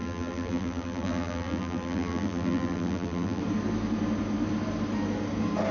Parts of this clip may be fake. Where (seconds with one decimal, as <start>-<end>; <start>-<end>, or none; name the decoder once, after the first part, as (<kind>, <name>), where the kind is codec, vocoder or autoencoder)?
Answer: 0.0-3.4 (vocoder, BigVGAN v2)

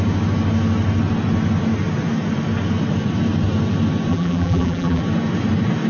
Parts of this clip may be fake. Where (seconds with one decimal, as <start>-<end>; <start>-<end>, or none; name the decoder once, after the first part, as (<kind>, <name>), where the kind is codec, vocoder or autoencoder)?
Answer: 4.1-5.0 (vocoder, BigVGAN v2)